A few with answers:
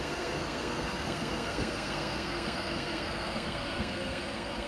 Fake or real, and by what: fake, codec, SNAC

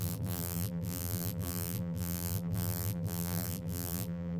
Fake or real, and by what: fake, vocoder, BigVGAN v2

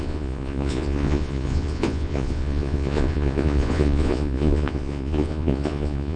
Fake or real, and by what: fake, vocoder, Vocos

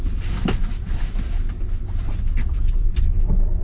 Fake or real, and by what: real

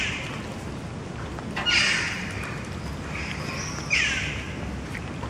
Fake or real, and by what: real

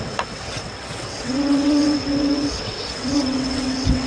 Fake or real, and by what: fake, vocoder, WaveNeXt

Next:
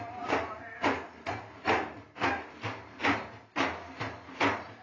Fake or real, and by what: real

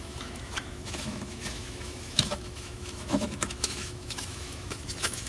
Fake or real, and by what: fake, autoencoder, DAC-VAE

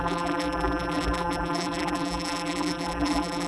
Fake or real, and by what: fake, vocoder, BigVGAN v2